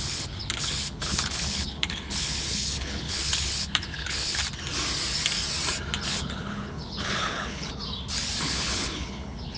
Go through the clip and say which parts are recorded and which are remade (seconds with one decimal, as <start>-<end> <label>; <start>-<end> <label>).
0.0-4.4 remade; 4.4-6.1 recorded; 6.1-7.8 remade; 7.8-8.4 recorded; 8.4-9.6 remade